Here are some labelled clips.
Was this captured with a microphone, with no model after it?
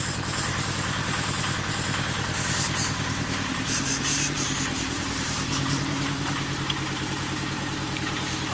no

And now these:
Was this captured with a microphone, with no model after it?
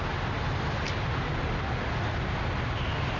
yes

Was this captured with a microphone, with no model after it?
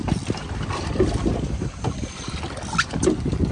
no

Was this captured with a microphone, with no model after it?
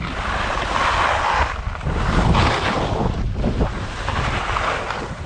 yes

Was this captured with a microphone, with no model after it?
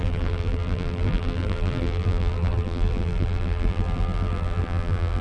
no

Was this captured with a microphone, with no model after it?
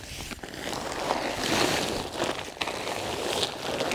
yes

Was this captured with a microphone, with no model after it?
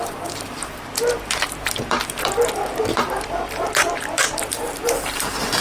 no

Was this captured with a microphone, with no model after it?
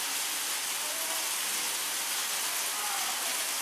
yes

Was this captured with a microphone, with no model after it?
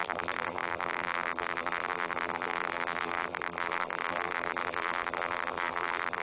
no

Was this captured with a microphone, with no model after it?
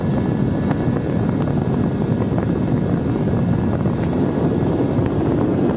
yes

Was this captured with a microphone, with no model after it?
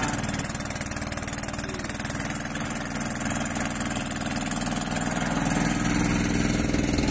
yes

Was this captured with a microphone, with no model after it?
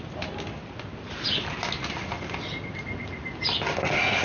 yes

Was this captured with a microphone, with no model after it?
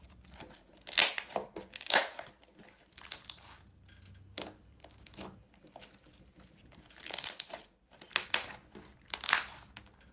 yes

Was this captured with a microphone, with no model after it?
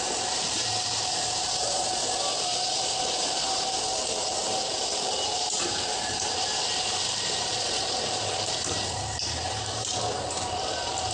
no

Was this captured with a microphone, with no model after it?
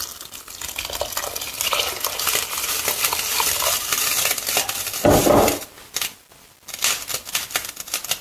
yes